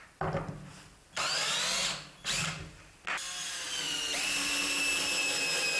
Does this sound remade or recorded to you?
recorded